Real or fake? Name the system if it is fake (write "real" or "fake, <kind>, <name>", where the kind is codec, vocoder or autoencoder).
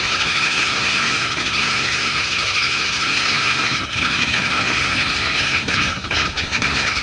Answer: fake, codec, SNAC